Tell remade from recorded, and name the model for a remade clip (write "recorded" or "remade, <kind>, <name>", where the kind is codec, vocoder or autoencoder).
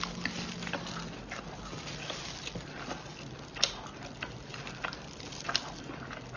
recorded